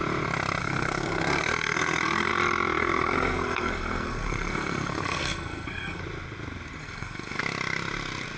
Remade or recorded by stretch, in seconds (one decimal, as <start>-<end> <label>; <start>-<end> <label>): 0.0-0.6 recorded; 0.6-2.3 remade; 2.3-2.8 recorded; 2.8-6.0 remade; 6.0-6.8 recorded; 6.8-7.4 remade; 7.4-8.4 recorded